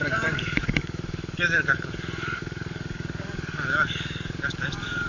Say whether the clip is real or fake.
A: fake